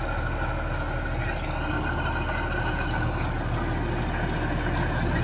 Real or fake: real